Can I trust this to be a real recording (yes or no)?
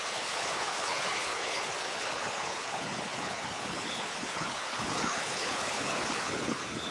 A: no